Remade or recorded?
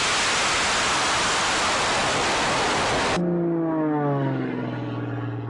recorded